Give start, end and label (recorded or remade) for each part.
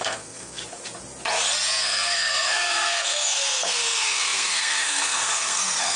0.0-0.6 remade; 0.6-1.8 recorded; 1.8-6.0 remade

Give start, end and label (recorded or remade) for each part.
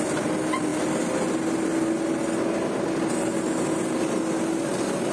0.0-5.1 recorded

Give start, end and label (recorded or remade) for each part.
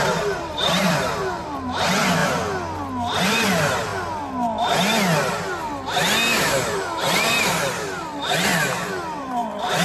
0.0-2.2 remade; 2.2-3.2 recorded; 3.2-3.9 remade; 3.9-6.4 recorded; 6.4-8.5 remade; 8.5-9.2 recorded; 9.2-9.8 remade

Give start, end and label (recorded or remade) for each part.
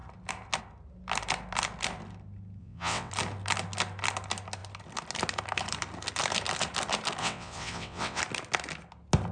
0.0-2.6 recorded; 2.6-3.1 remade; 3.1-7.2 recorded; 7.2-8.2 remade; 8.2-9.3 recorded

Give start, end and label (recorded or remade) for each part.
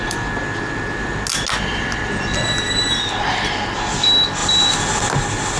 0.0-5.6 recorded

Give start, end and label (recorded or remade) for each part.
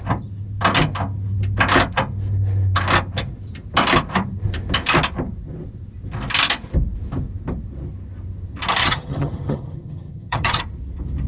0.0-8.8 recorded; 8.8-10.6 remade; 10.6-11.3 recorded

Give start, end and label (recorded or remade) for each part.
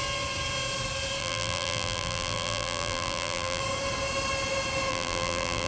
0.0-1.2 recorded; 1.2-3.6 remade; 3.6-4.9 recorded; 4.9-5.7 remade